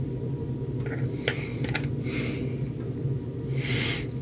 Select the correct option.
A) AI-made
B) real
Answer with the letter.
B